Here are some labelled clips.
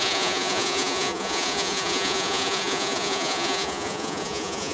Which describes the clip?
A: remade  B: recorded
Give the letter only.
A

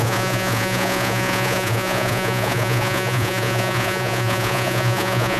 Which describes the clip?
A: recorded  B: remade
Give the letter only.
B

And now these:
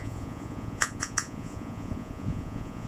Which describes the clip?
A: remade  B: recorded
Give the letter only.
A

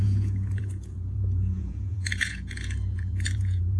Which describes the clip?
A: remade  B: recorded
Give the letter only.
A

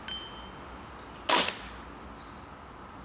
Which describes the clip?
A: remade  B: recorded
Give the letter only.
B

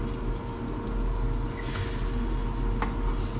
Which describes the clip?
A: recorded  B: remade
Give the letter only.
A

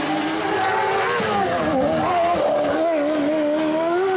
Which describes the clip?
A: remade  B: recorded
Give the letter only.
B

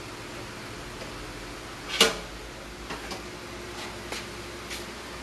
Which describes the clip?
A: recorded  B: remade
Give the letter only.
A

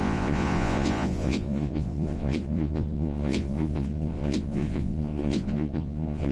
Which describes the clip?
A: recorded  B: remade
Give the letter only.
B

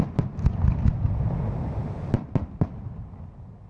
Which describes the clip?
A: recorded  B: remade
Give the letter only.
A